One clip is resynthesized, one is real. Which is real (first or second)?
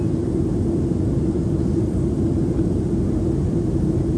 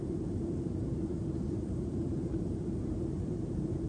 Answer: first